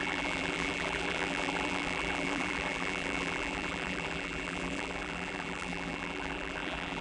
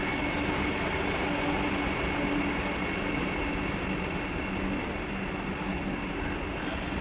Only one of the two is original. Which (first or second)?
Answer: second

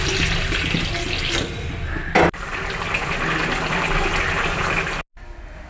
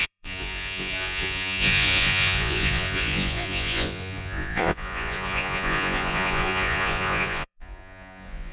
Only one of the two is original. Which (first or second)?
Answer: first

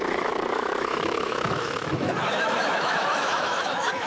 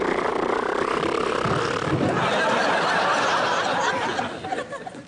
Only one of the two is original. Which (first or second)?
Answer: second